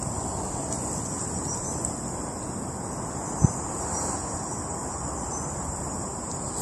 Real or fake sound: real